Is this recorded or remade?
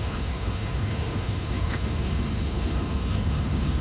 remade